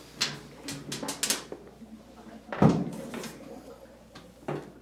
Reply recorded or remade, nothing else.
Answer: recorded